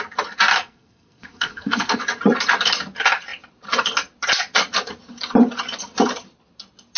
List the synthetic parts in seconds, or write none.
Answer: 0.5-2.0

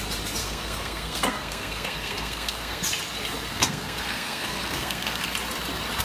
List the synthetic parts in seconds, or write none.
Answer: 0.4-2.8; 3.5-5.2

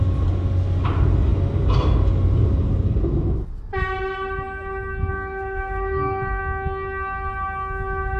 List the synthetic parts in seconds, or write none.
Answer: 5.1-6.4

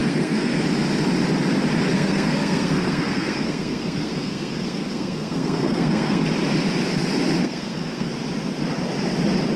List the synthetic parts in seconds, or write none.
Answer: 0.0-0.6; 1.9-6.2; 7.4-8.1

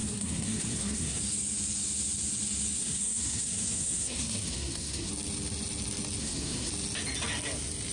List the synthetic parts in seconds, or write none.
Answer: 0.0-1.2; 2.8-5.1; 6.2-6.7

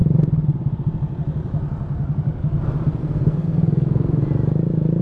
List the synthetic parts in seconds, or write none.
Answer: 3.0-4.2

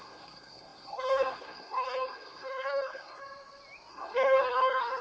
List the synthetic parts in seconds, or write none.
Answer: 0.0-3.2; 3.9-5.0

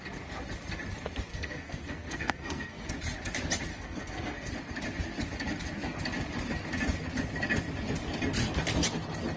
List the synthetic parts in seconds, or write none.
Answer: 1.3-2.9; 3.7-4.5